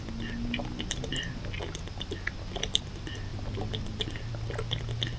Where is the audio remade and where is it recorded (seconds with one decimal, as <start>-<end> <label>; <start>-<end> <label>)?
0.0-3.3 recorded; 3.3-4.3 remade; 4.3-5.2 recorded